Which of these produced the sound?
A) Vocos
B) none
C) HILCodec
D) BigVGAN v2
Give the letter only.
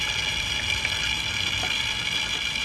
B